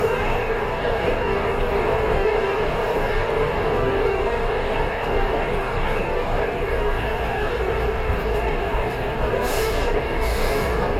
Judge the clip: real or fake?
fake